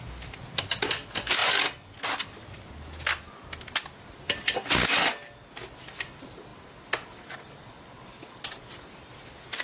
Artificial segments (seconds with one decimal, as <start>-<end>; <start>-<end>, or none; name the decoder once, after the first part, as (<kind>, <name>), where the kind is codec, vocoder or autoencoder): none